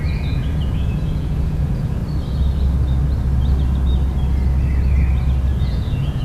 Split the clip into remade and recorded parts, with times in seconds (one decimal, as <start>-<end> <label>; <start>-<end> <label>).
0.0-2.0 remade; 2.0-5.6 recorded; 5.6-6.2 remade